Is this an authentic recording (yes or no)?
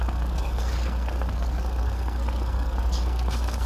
no